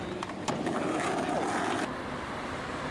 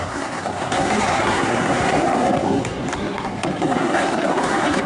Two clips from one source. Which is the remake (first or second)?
second